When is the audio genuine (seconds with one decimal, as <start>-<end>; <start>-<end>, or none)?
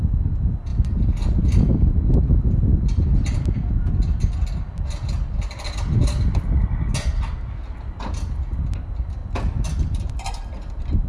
0.0-9.2; 10.6-11.1